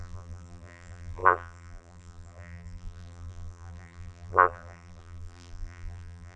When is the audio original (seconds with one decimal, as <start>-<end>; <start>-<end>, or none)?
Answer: none